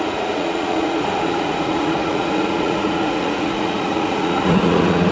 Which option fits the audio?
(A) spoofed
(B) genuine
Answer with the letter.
A